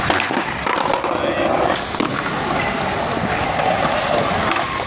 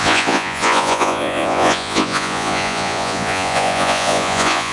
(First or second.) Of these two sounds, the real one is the first